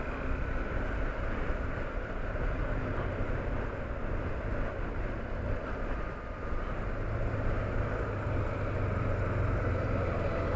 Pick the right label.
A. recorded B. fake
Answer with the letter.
A